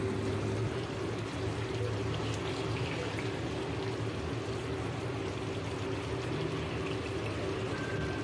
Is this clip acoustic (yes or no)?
yes